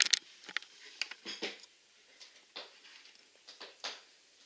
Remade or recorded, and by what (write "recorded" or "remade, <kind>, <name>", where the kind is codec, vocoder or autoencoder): recorded